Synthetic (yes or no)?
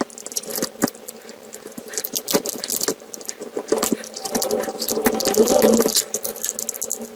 no